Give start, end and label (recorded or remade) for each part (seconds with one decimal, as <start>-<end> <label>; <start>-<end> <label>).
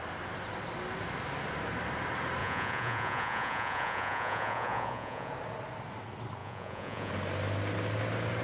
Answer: 0.0-2.4 recorded; 2.4-5.3 remade; 5.3-6.4 recorded; 6.4-7.1 remade; 7.1-8.4 recorded